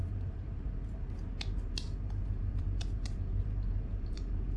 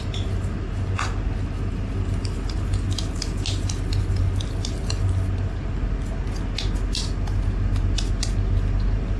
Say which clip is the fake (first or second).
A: first